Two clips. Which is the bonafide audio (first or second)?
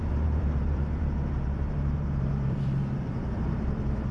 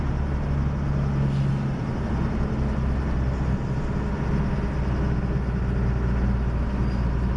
second